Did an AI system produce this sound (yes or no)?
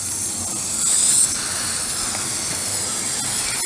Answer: no